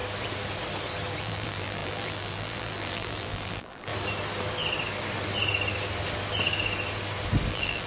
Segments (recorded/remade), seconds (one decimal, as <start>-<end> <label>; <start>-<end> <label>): 0.0-1.2 recorded; 1.2-3.9 remade; 3.9-7.5 recorded; 7.5-7.9 remade